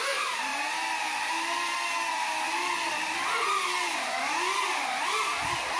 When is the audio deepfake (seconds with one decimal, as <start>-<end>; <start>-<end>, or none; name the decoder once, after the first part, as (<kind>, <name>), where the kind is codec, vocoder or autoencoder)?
0.5-1.9 (vocoder, BigVGAN v2)